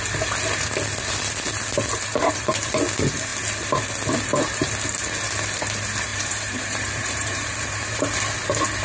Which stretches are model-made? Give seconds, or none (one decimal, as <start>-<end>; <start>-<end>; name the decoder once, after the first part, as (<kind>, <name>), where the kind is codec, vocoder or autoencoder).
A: 2.1-2.7 (vocoder, BigVGAN v2); 6.1-8.0

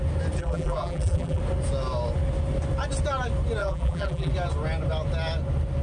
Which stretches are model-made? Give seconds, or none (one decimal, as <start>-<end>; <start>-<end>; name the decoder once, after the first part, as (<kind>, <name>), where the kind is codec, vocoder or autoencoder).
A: 0.4-1.4 (vocoder, BigVGAN v2); 3.6-4.3

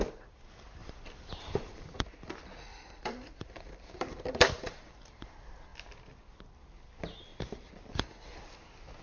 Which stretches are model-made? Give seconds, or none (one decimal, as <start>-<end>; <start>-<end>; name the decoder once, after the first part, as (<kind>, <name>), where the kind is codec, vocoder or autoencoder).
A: 0.8-2.0 (vocoder, BigVGAN v2); 2.7-5.3; 7.3-8.4

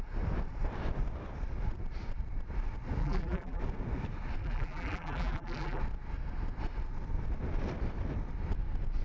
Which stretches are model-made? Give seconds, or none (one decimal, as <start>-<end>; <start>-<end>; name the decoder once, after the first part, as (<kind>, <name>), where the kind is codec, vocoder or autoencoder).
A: 3.0-3.6 (vocoder, BigVGAN v2); 4.4-5.8